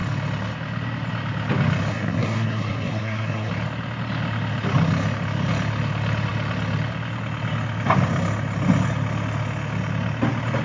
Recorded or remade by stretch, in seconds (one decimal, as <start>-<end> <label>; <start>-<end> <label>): 0.0-1.9 recorded; 1.9-3.5 remade; 3.5-10.6 recorded